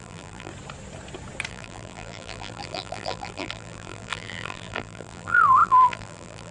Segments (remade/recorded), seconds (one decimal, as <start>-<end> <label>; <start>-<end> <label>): 0.0-0.5 remade; 0.5-1.5 recorded; 1.5-6.5 remade